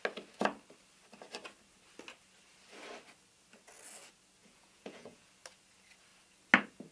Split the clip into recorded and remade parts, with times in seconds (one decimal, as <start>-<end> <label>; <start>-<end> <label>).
0.0-4.4 recorded; 4.4-5.3 remade; 5.3-6.9 recorded